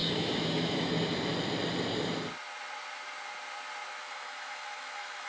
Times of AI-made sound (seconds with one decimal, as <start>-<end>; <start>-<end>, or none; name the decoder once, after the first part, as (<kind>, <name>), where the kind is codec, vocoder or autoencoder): 0.0-0.9 (autoencoder, DAC-VAE); 4.0-5.3